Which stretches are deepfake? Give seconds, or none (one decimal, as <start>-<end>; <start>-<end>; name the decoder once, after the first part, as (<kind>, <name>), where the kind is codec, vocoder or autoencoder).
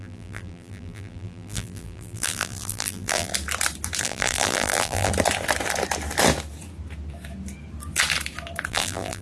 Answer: 0.0-3.3 (vocoder, BigVGAN v2); 4.0-5.1; 8.7-9.2